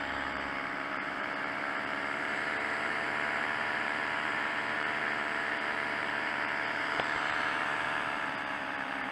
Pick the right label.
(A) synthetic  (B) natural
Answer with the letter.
A